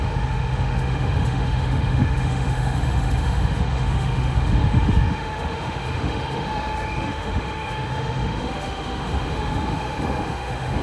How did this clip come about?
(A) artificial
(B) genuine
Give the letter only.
A